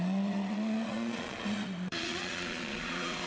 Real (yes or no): no